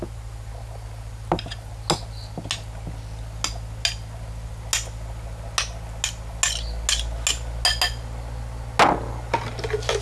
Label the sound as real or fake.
real